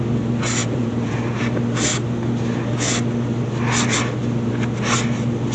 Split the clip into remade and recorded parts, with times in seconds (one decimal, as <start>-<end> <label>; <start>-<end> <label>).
0.0-0.6 recorded; 0.6-1.2 remade; 1.2-5.5 recorded